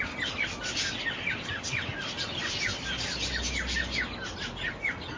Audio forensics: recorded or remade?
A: recorded